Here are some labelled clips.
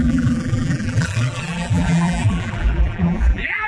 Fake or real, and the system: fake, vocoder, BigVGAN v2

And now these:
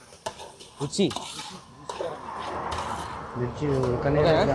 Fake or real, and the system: real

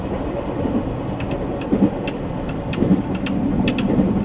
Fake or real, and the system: real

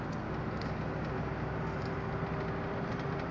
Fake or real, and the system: real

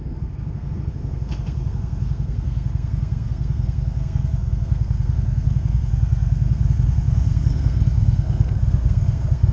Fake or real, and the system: fake, codec, SNAC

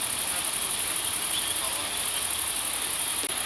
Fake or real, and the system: real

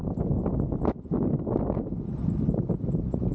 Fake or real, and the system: real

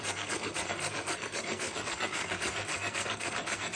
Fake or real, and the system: fake, codec, SNAC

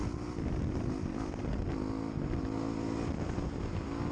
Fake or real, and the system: real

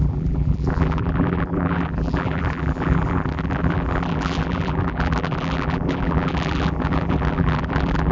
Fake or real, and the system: fake, vocoder, BigVGAN v2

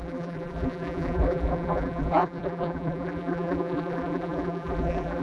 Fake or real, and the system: fake, vocoder, BigVGAN v2